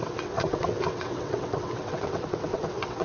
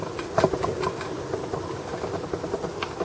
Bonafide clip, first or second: second